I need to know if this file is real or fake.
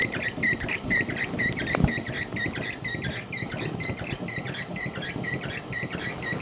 real